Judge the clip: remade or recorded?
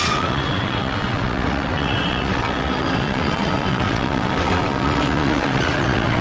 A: remade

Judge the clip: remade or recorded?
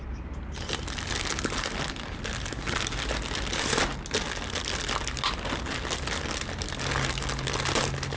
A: recorded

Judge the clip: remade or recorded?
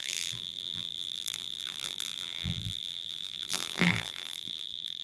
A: remade